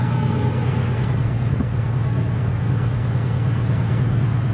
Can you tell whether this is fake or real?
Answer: fake